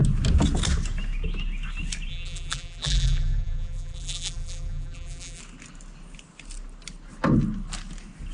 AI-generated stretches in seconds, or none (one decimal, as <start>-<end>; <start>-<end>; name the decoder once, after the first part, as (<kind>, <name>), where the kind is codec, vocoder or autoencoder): 2.1-5.4 (vocoder, BigVGAN v2)